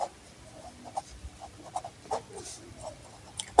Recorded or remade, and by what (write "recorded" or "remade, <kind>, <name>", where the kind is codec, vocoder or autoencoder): recorded